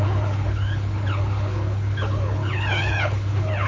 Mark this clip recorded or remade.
remade